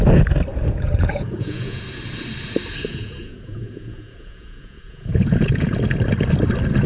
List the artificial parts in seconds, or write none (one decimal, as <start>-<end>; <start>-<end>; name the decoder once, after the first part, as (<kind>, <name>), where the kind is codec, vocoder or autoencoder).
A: 0.5-1.8 (vocoder, Vocos); 2.9-5.7